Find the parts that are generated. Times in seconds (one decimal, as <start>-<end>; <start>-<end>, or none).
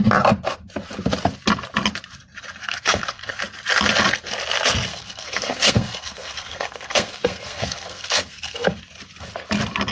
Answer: 2.6-3.4; 4.9-8.8